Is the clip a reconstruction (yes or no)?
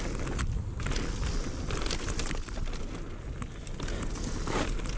no